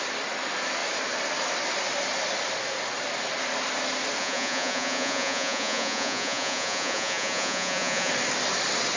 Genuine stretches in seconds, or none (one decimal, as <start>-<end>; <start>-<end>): 0.0-4.2; 8.1-9.0